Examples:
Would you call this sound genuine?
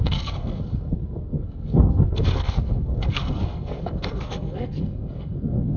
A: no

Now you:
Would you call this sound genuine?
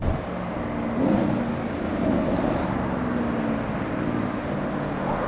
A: yes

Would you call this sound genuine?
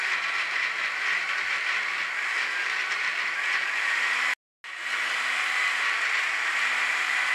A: yes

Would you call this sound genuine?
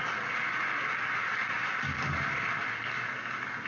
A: yes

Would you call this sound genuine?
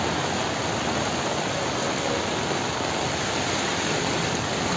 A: yes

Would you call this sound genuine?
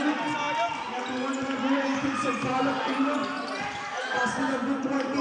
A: yes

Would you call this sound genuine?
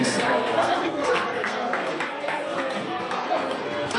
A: no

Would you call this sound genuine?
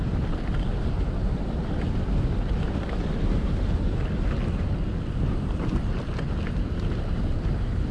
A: yes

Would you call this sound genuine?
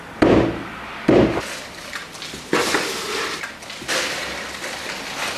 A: yes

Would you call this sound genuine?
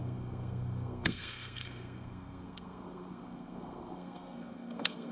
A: no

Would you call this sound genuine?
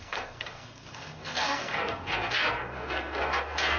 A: no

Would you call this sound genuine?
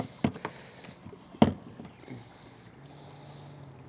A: yes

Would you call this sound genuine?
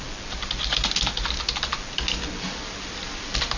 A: yes